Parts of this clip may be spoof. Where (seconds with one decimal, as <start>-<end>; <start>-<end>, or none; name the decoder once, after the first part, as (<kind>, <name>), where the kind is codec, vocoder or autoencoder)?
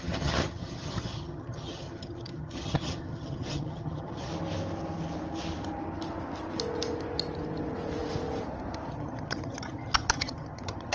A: 0.0-4.3 (vocoder, HiFi-GAN); 8.9-10.9